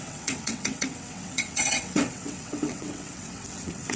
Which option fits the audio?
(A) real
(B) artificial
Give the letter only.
B